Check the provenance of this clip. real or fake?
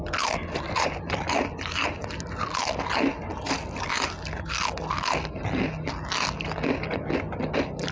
real